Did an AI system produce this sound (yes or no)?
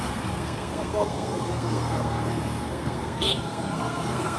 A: yes